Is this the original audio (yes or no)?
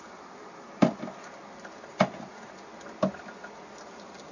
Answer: yes